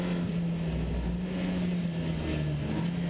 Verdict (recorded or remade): recorded